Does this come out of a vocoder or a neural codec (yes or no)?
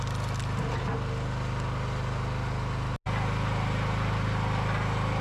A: no